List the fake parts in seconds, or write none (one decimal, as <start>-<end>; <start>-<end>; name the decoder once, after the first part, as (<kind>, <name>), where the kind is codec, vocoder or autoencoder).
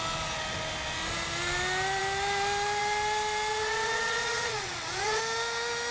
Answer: 3.5-5.2 (vocoder, WaveNeXt)